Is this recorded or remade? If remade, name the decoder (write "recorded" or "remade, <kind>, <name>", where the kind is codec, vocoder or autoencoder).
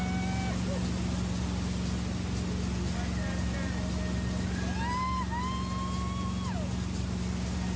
recorded